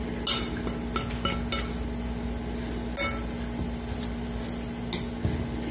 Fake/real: real